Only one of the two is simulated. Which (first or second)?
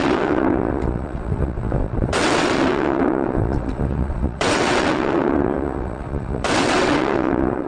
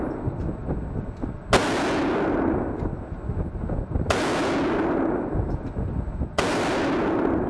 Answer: first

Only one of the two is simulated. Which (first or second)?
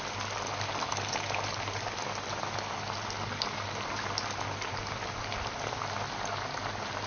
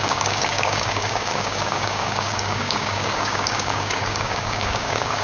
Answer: second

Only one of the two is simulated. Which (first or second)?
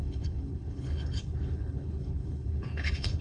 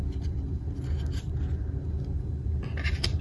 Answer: first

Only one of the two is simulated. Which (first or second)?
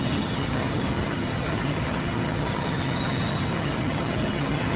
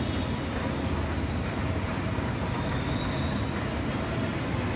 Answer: first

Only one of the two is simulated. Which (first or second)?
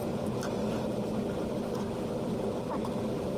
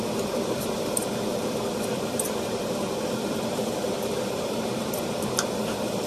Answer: second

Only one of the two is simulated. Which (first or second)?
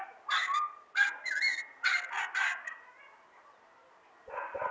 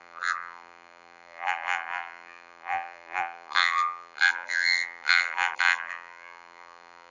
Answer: second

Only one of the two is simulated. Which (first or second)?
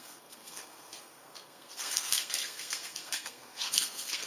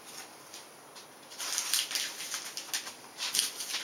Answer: first